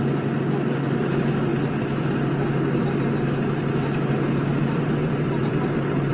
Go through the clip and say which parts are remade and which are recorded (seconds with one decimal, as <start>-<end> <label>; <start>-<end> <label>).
0.0-4.5 recorded; 4.5-6.1 remade